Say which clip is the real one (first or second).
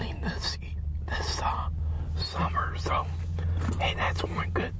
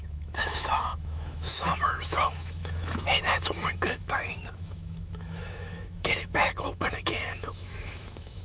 first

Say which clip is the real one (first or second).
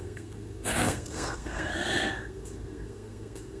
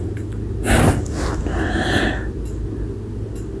second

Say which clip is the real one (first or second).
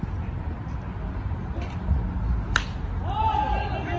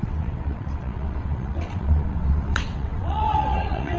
first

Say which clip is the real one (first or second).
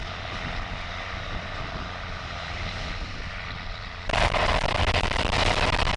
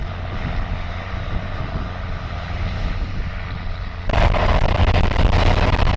second